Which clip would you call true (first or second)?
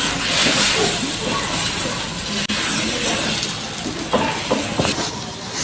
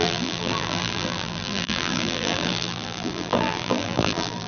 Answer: first